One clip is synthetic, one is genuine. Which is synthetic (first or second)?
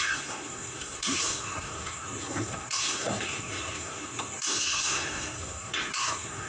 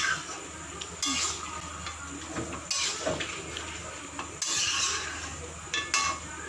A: first